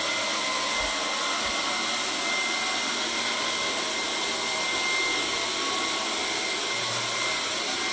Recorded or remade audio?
recorded